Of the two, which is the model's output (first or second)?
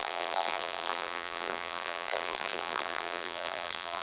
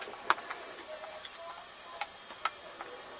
first